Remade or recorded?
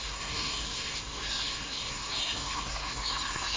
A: remade